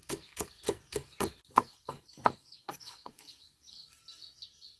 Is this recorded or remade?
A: remade